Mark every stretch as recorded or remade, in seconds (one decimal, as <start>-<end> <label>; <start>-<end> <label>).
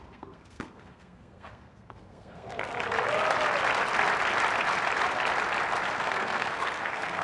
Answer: 0.0-2.7 remade; 2.7-6.0 recorded; 6.0-7.2 remade